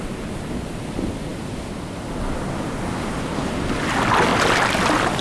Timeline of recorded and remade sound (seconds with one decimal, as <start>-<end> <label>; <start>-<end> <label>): 0.0-5.2 recorded